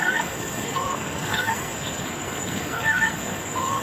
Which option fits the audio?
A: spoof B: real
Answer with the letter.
A